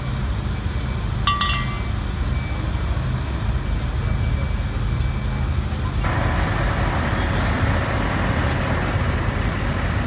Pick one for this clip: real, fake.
real